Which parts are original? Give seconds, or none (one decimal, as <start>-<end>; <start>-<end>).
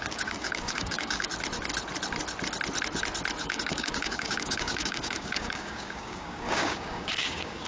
1.3-3.4